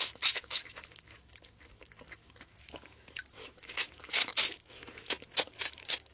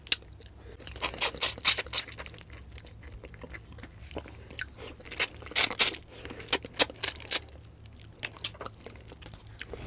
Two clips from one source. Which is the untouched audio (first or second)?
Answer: second